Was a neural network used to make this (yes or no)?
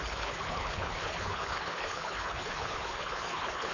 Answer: yes